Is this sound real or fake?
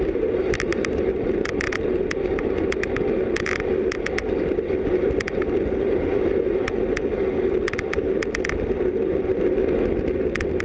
real